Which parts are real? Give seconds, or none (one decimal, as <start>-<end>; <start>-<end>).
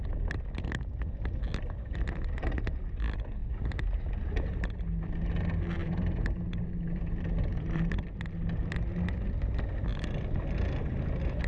0.0-3.4; 4.8-5.8; 7.9-11.5